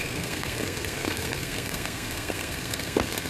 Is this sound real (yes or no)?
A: no